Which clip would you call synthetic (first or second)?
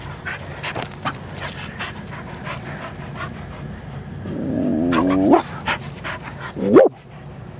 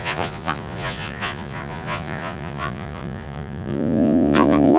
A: second